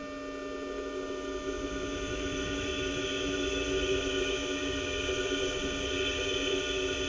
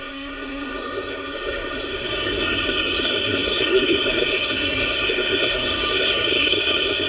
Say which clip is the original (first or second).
first